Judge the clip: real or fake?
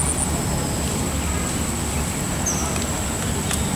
real